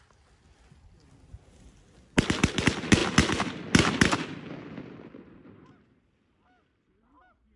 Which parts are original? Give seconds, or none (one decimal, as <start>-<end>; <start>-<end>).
0.0-7.6